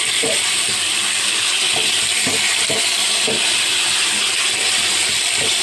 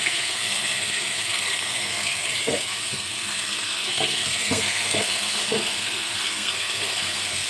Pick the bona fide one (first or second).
first